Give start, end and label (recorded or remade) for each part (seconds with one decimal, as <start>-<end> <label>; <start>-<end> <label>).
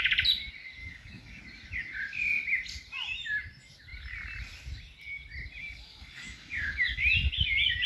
0.0-0.8 recorded; 0.8-1.4 remade; 1.4-5.6 recorded; 5.6-7.0 remade; 7.0-7.9 recorded